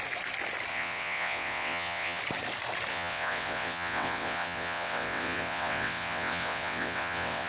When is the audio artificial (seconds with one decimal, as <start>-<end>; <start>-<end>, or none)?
0.7-2.2; 2.9-7.5